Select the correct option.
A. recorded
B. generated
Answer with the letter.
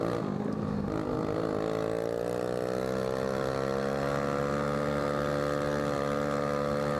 A